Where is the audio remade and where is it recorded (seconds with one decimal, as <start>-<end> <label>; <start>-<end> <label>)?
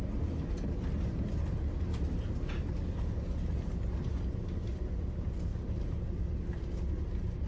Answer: 0.0-5.5 recorded; 5.5-7.5 remade